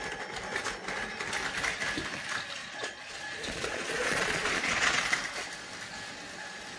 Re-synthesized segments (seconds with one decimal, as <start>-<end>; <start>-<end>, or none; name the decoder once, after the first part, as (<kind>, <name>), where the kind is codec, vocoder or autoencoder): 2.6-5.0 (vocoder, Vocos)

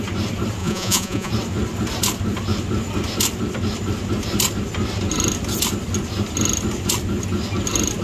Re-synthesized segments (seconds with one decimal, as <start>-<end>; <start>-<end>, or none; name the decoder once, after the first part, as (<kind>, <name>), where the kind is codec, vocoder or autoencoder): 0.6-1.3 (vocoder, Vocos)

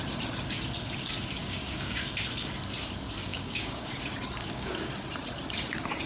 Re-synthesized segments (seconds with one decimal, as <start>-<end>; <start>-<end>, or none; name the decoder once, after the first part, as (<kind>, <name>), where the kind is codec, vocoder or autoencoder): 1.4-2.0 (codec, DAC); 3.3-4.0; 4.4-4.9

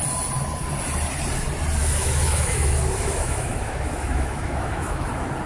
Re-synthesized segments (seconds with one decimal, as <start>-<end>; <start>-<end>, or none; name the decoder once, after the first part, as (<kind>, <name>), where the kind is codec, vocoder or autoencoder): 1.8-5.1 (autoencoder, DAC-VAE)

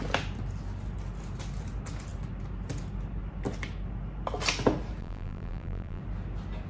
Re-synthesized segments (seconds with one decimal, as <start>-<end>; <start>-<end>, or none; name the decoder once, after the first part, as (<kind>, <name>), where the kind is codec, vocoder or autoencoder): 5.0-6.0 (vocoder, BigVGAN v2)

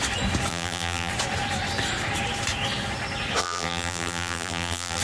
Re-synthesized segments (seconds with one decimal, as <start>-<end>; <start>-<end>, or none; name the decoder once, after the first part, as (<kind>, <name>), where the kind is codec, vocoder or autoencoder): 0.5-1.1 (vocoder, BigVGAN v2); 3.4-5.0

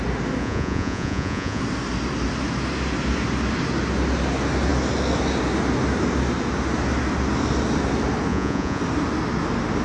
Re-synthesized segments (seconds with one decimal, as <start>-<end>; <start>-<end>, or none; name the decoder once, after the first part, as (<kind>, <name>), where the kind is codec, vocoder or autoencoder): 0.4-1.6 (vocoder, Vocos); 8.3-8.8